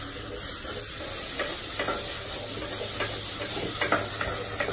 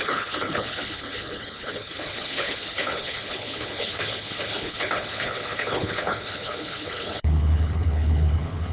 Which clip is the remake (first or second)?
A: second